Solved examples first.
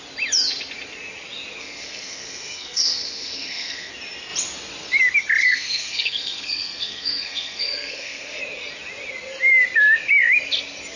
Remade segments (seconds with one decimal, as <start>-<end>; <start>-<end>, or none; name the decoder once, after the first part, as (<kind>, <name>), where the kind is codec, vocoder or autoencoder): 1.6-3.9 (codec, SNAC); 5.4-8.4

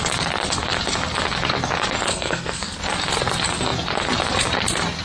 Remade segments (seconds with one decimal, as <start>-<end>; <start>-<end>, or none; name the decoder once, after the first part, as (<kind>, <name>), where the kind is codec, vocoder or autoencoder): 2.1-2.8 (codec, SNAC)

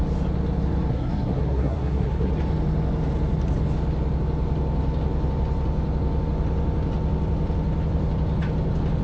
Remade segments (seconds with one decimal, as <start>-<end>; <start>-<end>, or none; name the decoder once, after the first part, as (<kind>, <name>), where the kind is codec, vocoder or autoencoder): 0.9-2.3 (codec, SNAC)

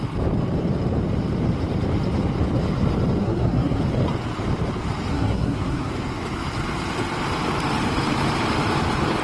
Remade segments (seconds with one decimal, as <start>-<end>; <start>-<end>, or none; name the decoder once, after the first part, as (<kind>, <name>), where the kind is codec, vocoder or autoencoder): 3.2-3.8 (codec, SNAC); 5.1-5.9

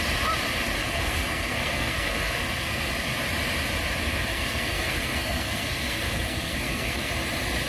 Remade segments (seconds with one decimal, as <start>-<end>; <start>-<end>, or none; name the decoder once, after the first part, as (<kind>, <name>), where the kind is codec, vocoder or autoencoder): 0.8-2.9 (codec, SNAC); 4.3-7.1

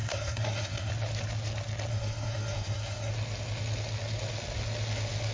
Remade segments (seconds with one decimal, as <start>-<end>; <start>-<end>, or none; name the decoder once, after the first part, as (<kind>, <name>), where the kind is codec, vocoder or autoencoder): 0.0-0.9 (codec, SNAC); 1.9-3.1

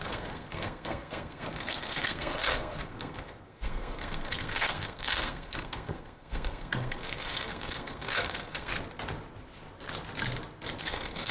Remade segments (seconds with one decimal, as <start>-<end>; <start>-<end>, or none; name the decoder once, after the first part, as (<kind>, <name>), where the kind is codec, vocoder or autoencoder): 0.0-8.7 (codec, SNAC); 10.8-11.3

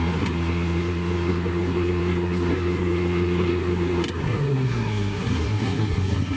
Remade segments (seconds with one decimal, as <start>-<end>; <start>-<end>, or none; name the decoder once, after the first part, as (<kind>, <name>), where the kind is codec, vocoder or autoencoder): 0.0-6.4 (codec, SNAC)